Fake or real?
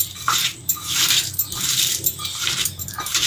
fake